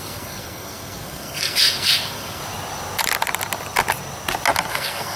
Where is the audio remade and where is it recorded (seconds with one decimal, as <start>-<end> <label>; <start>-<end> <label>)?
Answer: 0.0-2.4 remade; 2.4-4.7 recorded; 4.7-5.2 remade